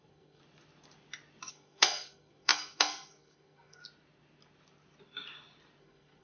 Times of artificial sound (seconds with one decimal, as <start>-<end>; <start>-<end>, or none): 0.0-0.4; 1.5-3.8; 5.8-6.2